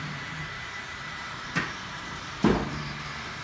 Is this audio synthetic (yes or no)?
yes